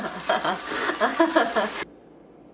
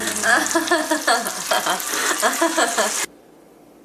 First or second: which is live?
second